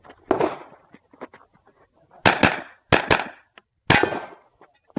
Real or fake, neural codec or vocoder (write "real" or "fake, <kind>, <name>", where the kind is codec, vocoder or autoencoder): real